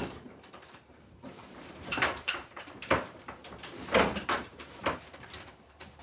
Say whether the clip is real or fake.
fake